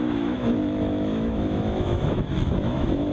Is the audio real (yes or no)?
no